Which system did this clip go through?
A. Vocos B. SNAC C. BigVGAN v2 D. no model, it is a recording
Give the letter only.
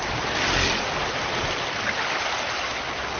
D